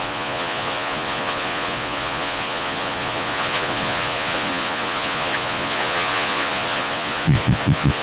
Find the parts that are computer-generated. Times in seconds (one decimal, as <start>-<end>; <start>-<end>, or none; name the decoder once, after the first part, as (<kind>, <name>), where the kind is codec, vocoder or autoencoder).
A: 0.0-8.0 (vocoder, Vocos)